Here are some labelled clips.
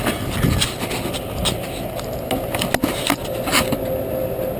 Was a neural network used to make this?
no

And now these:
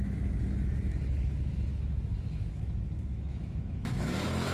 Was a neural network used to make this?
yes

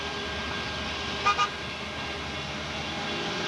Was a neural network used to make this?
no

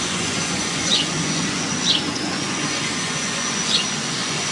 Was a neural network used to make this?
yes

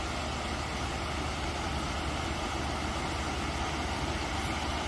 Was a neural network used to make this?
no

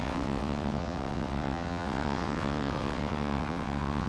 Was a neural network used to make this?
yes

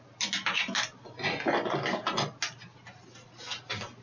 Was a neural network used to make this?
no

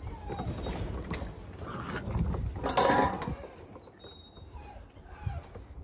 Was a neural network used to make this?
no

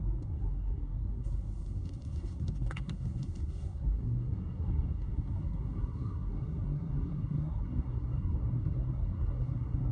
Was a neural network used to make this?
yes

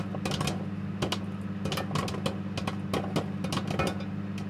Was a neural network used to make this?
no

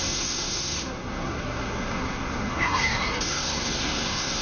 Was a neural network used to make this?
yes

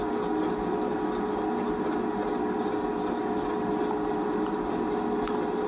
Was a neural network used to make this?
no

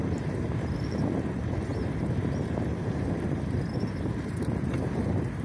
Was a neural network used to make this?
yes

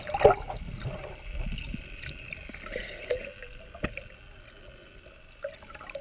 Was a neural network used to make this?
no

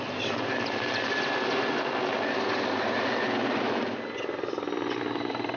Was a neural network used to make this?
no